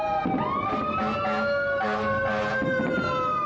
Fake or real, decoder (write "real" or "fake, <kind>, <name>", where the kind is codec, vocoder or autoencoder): real